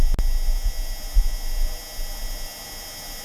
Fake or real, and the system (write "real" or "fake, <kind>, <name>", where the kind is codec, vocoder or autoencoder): real